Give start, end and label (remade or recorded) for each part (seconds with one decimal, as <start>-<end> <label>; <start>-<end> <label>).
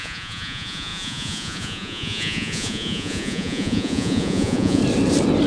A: 0.0-4.8 remade; 4.8-5.5 recorded